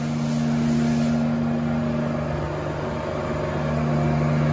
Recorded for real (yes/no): yes